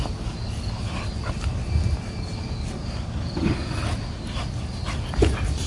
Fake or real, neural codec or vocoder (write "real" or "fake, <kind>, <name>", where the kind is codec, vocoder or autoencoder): real